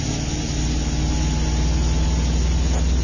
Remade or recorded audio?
recorded